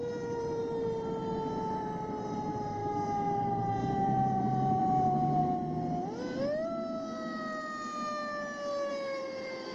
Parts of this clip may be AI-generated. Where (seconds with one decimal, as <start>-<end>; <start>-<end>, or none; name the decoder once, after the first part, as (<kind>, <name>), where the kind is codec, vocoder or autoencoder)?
0.0-5.4 (vocoder, BigVGAN v2); 8.9-9.7

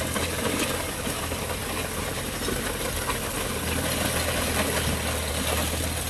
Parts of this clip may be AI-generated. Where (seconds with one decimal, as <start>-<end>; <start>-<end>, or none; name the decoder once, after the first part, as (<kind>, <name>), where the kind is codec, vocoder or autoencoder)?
none

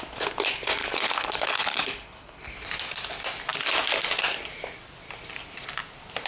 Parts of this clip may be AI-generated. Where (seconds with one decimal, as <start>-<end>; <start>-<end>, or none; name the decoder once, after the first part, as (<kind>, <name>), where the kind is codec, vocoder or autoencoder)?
0.8-2.7 (codec, HILCodec)

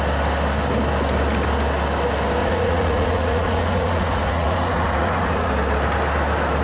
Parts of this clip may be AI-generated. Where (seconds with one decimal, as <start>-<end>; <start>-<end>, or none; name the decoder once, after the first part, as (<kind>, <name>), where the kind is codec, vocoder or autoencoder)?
2.4-5.5 (vocoder, Vocos)